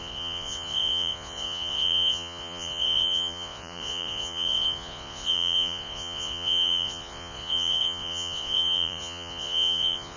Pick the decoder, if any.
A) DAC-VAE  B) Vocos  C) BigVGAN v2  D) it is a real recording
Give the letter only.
B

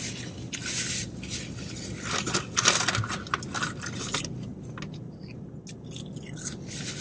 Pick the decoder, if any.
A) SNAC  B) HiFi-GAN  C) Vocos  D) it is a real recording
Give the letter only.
D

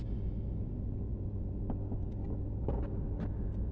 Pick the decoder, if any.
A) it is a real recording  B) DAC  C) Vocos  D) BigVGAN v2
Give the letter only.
A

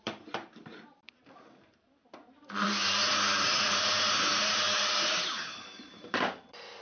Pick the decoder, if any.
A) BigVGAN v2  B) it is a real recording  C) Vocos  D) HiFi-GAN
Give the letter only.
A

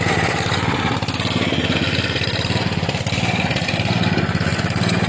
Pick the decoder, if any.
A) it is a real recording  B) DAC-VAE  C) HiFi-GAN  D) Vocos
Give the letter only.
A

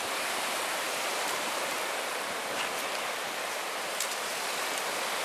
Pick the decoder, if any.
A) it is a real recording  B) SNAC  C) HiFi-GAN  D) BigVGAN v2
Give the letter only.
D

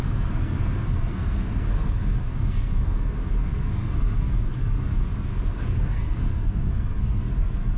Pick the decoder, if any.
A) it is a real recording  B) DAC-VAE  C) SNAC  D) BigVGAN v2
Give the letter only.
C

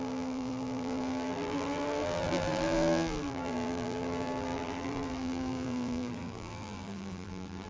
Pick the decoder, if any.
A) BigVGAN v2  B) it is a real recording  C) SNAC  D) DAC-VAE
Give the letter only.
A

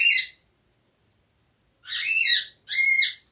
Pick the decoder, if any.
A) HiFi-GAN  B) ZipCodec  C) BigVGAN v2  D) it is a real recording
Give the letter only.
D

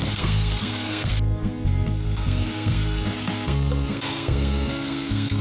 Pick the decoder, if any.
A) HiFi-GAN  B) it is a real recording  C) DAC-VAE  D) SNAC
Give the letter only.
D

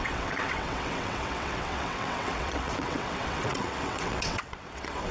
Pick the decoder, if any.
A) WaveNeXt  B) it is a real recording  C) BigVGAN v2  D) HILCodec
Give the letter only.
A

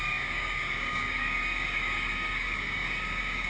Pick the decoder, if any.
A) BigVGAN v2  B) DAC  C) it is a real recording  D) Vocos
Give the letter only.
B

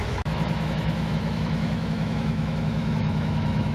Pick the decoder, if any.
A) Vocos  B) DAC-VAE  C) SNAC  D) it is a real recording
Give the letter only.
B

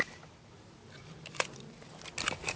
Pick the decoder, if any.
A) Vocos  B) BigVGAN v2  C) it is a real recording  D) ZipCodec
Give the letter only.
C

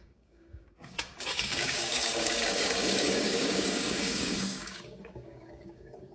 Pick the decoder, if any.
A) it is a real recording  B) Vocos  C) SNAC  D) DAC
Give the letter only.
D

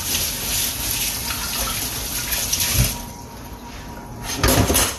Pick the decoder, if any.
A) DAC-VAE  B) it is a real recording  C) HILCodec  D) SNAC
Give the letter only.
B